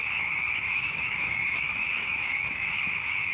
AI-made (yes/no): yes